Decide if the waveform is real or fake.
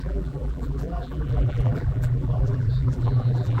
fake